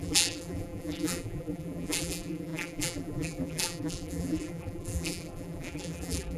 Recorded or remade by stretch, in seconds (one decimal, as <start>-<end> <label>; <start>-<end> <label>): 0.0-6.4 remade